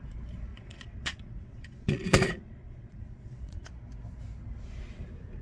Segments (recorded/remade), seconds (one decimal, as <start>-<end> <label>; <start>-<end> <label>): 0.0-0.5 recorded; 0.5-3.7 remade; 3.7-5.4 recorded